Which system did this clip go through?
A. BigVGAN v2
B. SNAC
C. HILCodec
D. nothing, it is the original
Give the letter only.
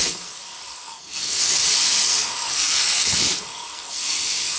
B